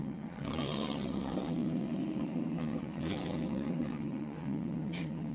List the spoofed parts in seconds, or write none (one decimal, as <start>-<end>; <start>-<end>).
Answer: 0.0-5.3